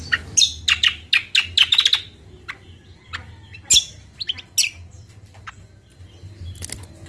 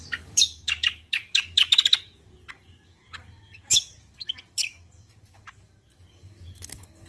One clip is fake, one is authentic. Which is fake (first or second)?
second